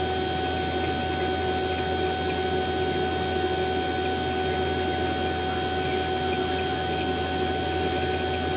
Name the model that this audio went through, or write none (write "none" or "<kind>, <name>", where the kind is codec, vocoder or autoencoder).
none